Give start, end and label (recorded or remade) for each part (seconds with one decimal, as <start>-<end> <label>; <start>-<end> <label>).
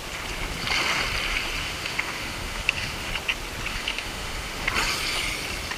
0.0-1.6 recorded; 1.6-3.1 remade; 3.1-3.7 recorded; 3.7-4.7 remade; 4.7-5.8 recorded